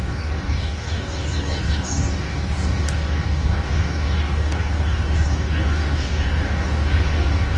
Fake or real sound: fake